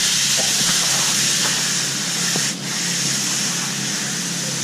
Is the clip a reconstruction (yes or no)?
no